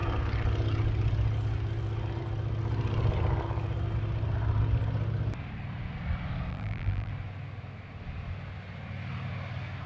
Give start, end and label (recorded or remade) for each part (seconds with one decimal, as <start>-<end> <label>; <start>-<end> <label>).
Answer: 0.0-6.5 recorded; 6.5-7.1 remade; 7.1-9.9 recorded